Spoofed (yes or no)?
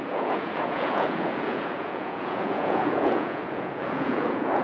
yes